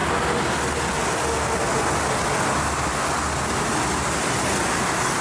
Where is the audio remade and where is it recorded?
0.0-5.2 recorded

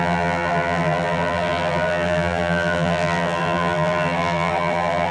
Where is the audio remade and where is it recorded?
0.0-5.1 remade

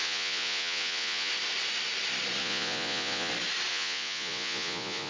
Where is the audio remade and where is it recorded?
0.0-1.3 remade; 1.3-2.4 recorded; 2.4-3.3 remade; 3.3-3.7 recorded; 3.7-5.1 remade

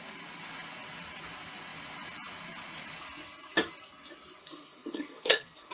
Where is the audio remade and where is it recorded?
0.0-4.4 recorded; 4.4-5.7 remade